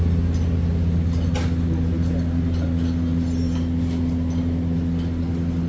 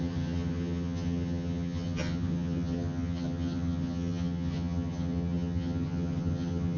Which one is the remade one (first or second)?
second